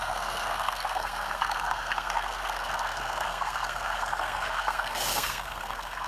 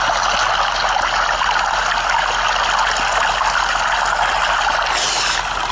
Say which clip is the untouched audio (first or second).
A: second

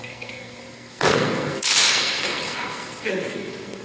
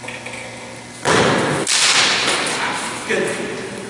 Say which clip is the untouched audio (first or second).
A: second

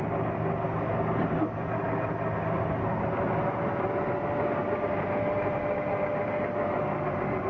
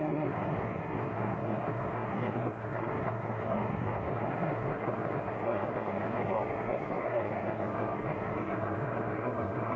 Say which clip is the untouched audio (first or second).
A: first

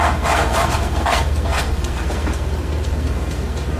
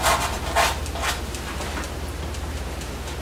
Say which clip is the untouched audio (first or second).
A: second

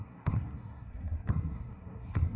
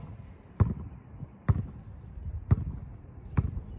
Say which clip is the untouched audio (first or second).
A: second